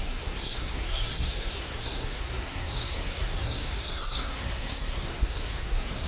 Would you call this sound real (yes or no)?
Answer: no